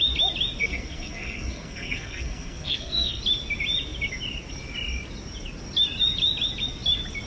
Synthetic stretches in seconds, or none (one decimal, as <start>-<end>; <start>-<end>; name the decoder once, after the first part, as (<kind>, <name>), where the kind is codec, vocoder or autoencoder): 0.6-3.2 (codec, SNAC)